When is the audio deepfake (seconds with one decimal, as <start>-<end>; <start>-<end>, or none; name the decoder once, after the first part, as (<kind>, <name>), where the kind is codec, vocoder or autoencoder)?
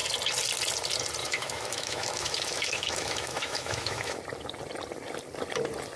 1.2-4.2 (autoencoder, DAC-VAE)